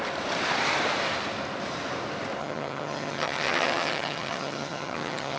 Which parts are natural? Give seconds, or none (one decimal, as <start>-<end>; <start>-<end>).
0.0-2.4